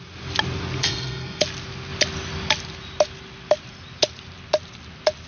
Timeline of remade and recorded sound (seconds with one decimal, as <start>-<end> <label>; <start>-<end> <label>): 0.0-0.8 recorded; 0.8-1.4 remade; 1.4-5.3 recorded